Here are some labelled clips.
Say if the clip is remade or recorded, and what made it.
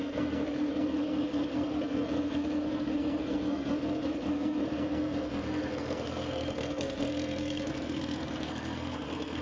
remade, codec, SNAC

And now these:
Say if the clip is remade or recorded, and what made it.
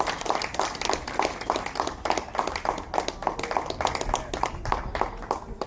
recorded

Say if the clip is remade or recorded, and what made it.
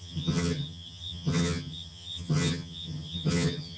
remade, vocoder, HiFi-GAN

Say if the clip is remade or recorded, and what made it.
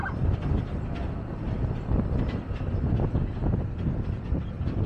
recorded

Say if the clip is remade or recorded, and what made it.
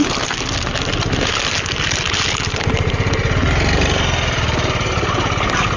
recorded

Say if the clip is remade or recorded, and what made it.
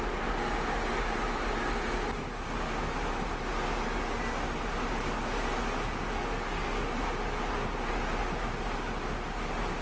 recorded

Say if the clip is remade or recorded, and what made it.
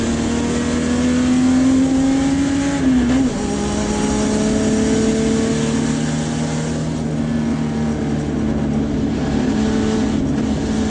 recorded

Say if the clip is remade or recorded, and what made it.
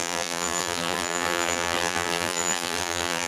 remade, vocoder, BigVGAN v2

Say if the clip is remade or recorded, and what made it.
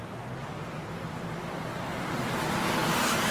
recorded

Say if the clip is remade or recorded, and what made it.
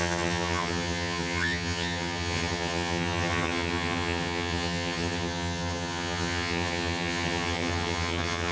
remade, vocoder, HiFi-GAN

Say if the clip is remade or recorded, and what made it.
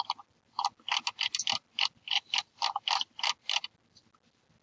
recorded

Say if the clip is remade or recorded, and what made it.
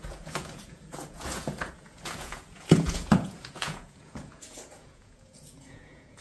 remade, vocoder, Vocos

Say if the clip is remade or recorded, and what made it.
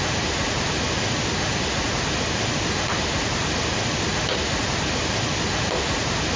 recorded